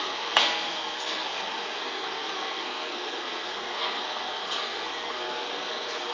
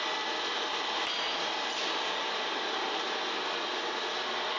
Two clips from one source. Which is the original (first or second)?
second